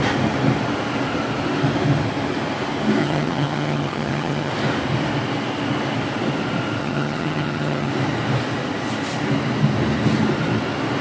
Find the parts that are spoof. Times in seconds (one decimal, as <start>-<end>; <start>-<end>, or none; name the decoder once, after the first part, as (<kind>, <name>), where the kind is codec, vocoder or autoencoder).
3.0-4.5 (vocoder, HiFi-GAN); 6.8-7.9